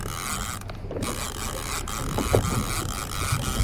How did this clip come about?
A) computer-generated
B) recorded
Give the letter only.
B